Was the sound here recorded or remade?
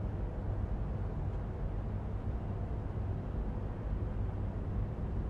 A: recorded